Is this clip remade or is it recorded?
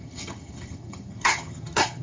remade